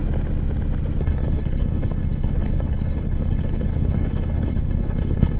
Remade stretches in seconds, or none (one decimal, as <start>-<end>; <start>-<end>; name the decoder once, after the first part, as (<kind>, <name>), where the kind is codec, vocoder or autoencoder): 1.0-5.4 (codec, HILCodec)